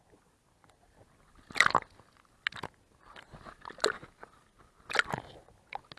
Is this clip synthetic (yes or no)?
no